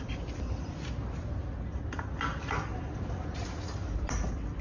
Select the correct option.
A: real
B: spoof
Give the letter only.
A